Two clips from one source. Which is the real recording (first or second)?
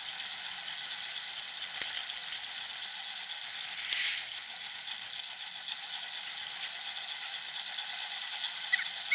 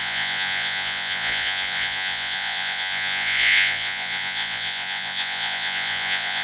first